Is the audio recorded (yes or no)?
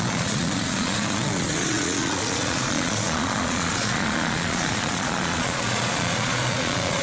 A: no